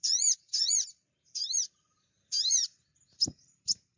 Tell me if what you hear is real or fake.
fake